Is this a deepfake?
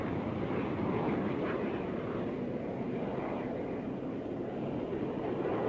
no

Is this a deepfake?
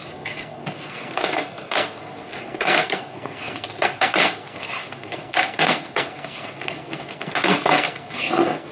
yes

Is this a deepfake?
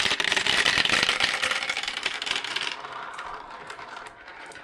yes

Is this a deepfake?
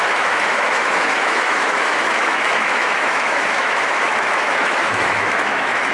yes